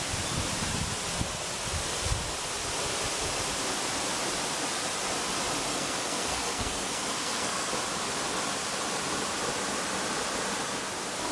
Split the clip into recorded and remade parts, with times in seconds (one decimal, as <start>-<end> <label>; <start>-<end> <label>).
0.0-5.7 recorded; 5.7-7.7 remade; 7.7-11.3 recorded